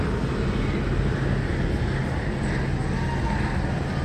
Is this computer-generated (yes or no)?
no